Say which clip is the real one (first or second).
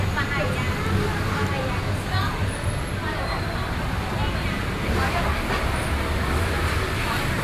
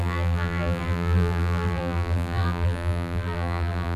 first